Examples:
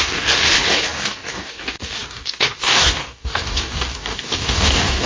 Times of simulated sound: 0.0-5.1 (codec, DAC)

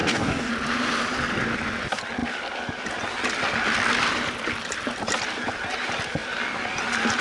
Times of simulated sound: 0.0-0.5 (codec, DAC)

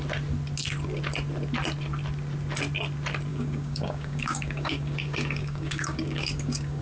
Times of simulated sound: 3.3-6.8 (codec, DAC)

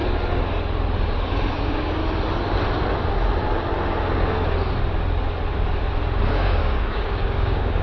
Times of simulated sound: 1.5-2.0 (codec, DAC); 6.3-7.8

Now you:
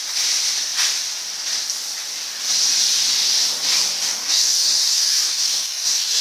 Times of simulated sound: 4.1-6.2 (codec, DAC)

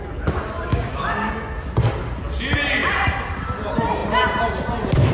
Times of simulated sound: 0.7-1.3 (codec, DAC)

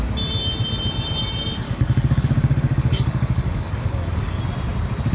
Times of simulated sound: 1.5-4.4 (codec, DAC)